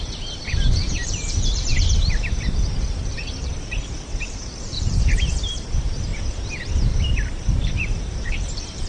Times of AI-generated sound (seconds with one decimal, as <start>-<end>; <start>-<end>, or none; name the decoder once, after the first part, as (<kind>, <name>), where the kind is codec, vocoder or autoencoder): 0.0-6.1 (vocoder, BigVGAN v2); 7.1-8.9